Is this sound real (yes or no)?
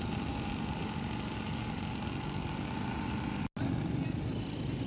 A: yes